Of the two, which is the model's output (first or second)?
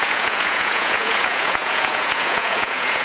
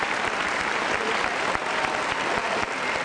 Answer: first